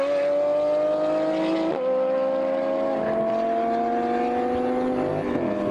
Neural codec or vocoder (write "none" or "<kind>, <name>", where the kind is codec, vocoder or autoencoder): none